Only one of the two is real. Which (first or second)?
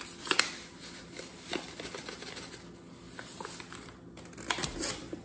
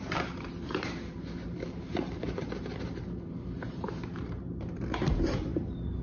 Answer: first